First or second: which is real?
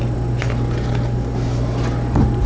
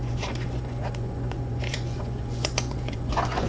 first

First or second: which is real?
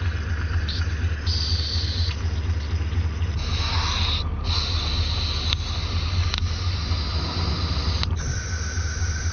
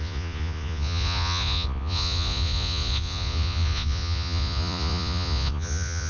first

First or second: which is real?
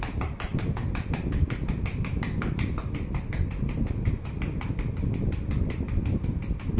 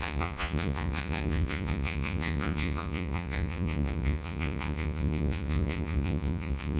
first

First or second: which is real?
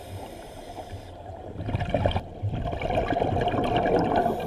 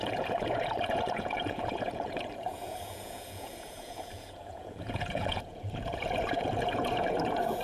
first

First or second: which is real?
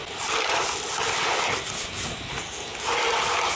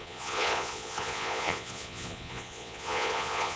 first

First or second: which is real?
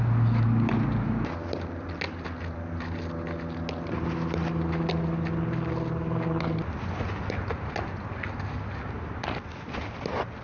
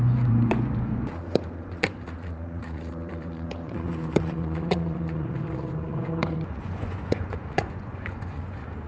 first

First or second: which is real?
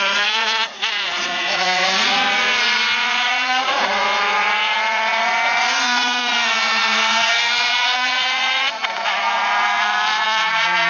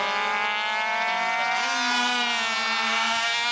second